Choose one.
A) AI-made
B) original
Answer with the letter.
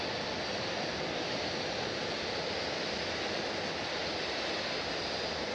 B